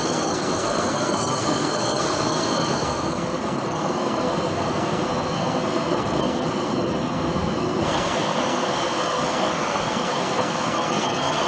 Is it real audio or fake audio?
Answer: fake